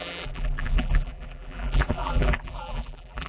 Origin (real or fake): fake